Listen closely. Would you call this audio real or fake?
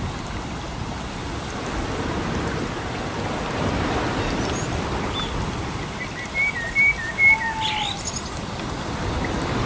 real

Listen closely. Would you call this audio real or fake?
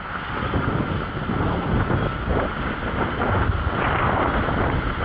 real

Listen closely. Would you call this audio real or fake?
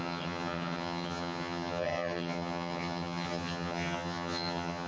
fake